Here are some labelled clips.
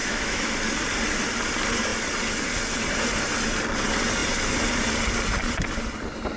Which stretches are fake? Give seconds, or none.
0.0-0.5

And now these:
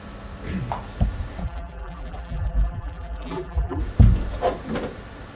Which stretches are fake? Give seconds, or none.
1.4-3.8

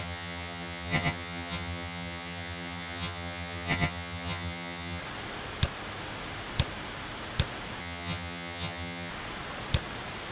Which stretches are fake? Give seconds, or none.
0.0-5.0; 7.8-9.1

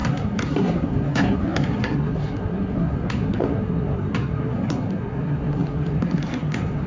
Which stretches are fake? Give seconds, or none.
0.0-6.9

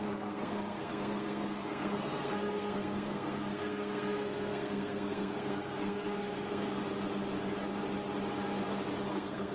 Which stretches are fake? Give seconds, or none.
0.0-6.8; 9.1-9.5

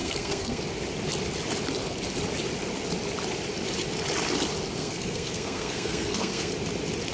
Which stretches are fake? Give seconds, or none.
0.0-0.6; 4.8-6.5

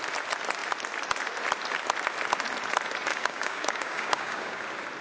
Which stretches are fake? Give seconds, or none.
3.1-4.6

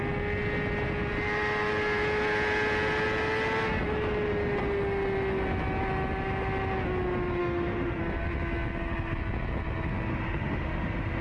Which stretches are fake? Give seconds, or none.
7.4-8.0; 10.1-11.2